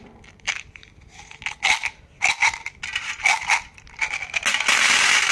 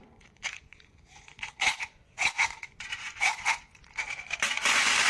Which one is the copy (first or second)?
second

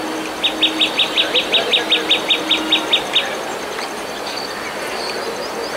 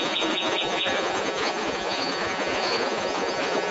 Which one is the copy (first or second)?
second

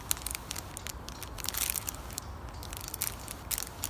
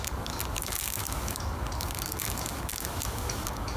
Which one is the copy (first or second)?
second